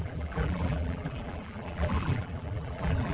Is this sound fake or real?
fake